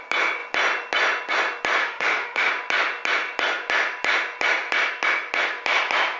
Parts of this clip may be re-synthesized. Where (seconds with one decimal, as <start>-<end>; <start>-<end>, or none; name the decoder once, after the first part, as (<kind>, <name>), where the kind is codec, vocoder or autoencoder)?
1.8-2.5 (autoencoder, DAC-VAE)